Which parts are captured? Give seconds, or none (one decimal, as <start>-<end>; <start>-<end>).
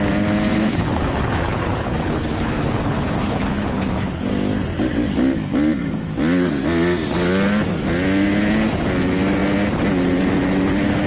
0.0-0.5; 4.3-11.1